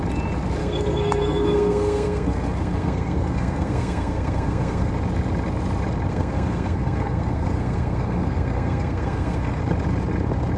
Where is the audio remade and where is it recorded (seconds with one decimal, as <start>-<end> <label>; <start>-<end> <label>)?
0.0-0.6 recorded; 0.6-4.9 remade; 4.9-6.1 recorded; 6.1-9.6 remade; 9.6-10.6 recorded